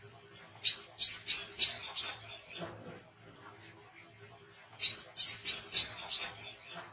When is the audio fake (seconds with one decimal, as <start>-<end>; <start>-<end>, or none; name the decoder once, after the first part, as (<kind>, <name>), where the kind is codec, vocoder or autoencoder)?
none